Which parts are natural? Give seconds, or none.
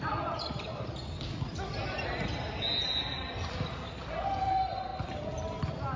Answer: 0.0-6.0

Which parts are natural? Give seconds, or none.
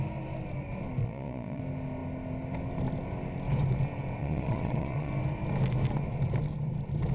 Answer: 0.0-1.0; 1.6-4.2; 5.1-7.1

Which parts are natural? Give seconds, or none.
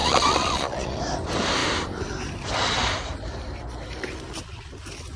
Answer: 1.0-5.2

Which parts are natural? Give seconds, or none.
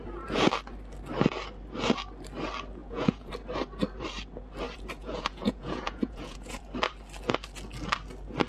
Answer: 0.0-2.8; 3.3-5.0; 6.6-8.5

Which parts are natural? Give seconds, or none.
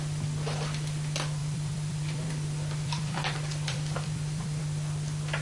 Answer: 0.0-1.4; 4.6-5.4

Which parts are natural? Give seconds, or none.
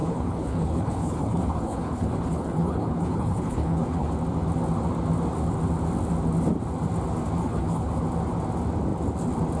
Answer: 4.1-7.4; 7.9-9.6